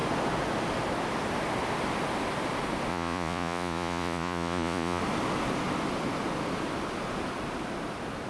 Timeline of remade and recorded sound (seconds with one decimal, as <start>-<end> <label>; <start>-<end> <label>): 0.0-2.9 recorded; 2.9-5.0 remade; 5.0-8.3 recorded